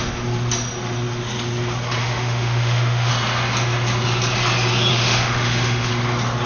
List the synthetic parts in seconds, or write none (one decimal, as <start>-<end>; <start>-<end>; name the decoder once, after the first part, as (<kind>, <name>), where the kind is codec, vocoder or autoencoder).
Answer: 2.0-3.1 (autoencoder, DAC-VAE); 4.9-5.9